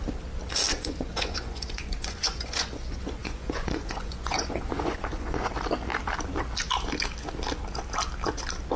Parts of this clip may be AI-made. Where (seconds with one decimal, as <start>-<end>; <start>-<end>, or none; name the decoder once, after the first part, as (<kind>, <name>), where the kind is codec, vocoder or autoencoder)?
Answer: 0.7-5.5 (vocoder, Vocos)